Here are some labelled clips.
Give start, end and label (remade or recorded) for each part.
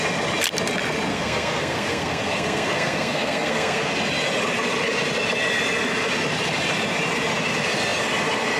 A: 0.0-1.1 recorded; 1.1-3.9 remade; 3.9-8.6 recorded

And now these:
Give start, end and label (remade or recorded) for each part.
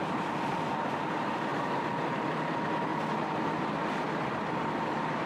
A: 0.0-5.3 recorded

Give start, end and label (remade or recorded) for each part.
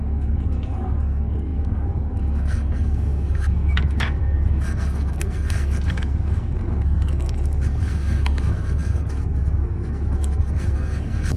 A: 0.0-11.4 remade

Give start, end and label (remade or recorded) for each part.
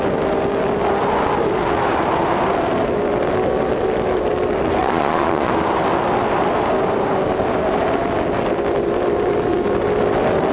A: 0.0-4.8 recorded; 4.8-5.5 remade; 5.5-10.5 recorded